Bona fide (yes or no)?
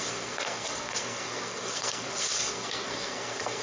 no